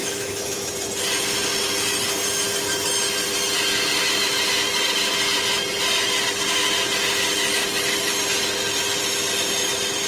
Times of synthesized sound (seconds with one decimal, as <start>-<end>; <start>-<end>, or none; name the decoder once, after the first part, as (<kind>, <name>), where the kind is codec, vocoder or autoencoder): 0.0-0.7 (autoencoder, DAC-VAE)